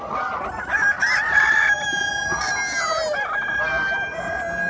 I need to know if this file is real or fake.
real